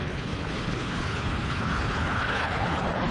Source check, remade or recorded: remade